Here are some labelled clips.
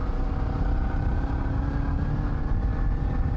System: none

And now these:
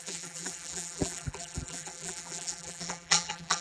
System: vocoder, BigVGAN v2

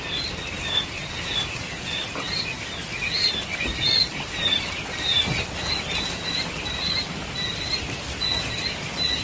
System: none